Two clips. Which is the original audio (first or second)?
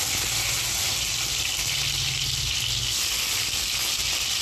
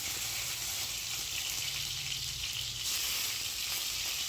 first